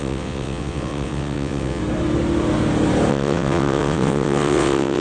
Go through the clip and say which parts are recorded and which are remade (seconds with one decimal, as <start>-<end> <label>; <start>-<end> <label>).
0.0-1.8 remade; 1.8-3.1 recorded; 3.1-5.0 remade